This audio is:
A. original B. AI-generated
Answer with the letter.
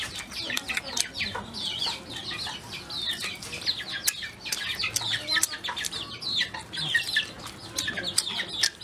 A